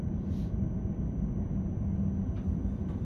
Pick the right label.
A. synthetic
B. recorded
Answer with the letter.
A